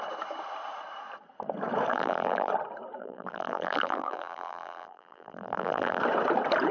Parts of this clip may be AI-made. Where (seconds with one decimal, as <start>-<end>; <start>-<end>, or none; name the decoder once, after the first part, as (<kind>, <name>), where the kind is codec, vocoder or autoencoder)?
1.9-2.5 (vocoder, BigVGAN v2); 3.0-6.0